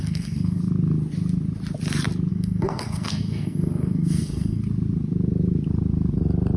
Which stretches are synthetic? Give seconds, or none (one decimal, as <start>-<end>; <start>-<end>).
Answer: 0.0-0.6; 2.3-4.6